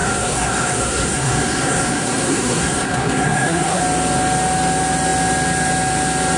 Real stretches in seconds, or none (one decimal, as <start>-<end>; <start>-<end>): 3.8-6.4